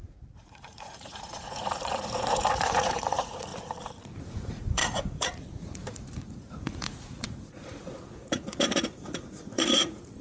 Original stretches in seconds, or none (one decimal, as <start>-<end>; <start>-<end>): 3.5-4.2